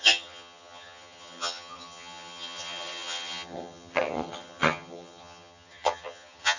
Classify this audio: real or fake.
fake